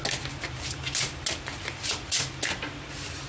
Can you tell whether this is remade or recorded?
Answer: recorded